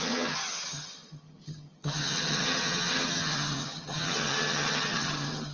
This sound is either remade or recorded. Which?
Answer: remade